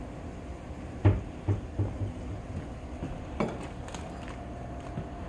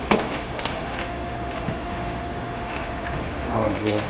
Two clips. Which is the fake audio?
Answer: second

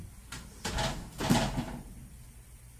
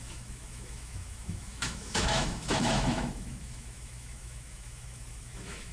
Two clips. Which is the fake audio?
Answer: second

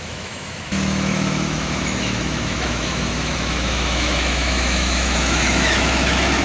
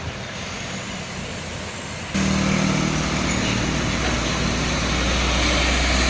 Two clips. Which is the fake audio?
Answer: first